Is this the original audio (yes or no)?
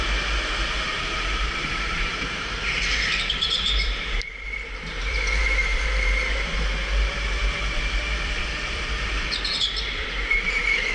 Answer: no